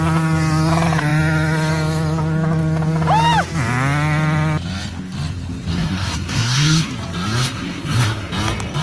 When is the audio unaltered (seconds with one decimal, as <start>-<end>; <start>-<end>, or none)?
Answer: 0.0-5.7; 6.9-7.4; 8.3-8.8